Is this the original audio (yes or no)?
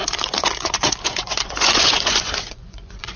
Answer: no